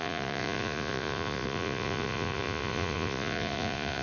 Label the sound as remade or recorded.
remade